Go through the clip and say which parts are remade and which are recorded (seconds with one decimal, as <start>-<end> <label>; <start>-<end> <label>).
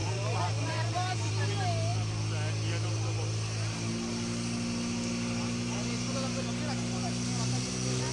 0.0-1.3 remade; 1.3-8.1 recorded